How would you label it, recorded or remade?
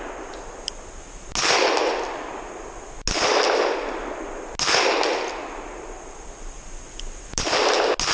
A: recorded